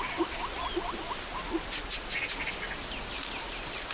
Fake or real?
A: real